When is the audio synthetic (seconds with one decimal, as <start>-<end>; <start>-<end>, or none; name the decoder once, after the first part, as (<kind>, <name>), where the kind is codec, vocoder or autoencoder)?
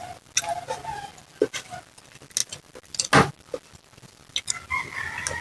none